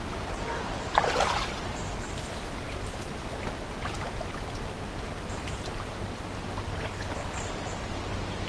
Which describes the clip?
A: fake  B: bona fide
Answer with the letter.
B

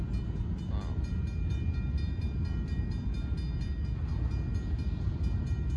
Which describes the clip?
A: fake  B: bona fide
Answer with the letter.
B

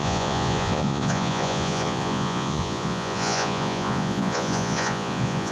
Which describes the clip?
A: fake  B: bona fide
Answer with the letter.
A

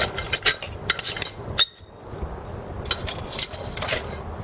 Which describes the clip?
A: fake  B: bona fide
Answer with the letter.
B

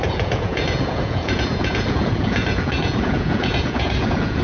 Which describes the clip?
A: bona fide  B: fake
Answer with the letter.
B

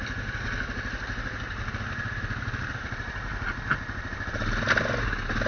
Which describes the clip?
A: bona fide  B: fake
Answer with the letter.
A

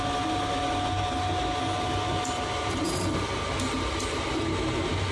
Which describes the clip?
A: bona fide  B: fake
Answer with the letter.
A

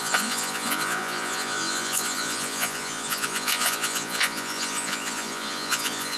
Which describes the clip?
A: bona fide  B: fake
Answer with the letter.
B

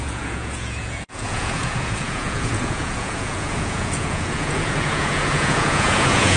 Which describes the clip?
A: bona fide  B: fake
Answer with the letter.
B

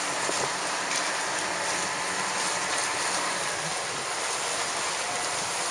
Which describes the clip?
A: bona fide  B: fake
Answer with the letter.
A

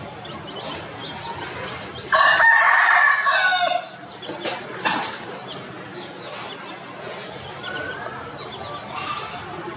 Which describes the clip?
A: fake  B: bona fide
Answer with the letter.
B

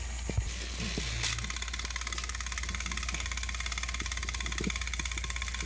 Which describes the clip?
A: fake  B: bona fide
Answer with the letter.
B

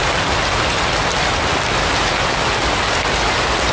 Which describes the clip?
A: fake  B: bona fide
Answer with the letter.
B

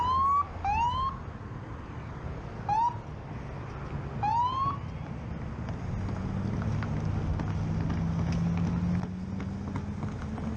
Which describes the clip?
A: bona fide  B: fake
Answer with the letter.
A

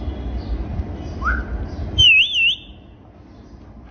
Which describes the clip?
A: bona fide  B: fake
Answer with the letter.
A